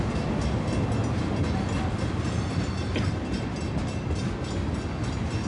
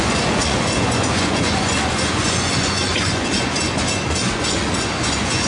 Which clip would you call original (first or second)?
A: first